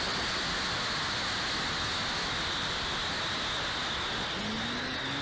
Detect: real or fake real